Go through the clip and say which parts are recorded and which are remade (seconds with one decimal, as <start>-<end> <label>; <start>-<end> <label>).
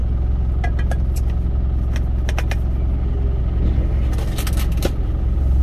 0.0-5.6 recorded